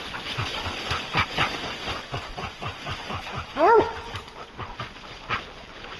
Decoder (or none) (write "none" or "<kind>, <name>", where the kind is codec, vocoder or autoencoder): vocoder, Vocos